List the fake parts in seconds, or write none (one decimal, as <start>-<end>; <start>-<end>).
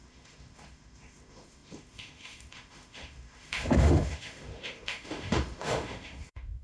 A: 0.0-6.6